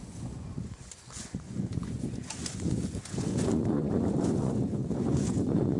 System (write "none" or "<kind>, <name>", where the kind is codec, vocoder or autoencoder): vocoder, Vocos